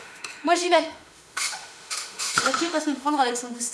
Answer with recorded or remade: remade